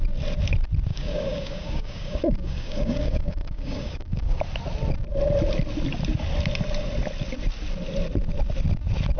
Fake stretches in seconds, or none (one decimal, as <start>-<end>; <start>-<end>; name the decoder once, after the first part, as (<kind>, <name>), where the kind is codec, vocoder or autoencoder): 0.9-4.4 (codec, DAC)